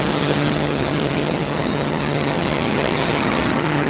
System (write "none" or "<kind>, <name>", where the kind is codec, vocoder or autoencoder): vocoder, HiFi-GAN